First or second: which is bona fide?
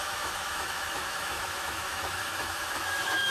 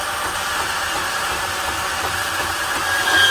second